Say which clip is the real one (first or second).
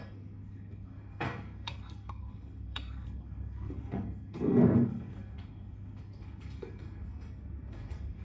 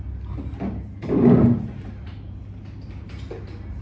second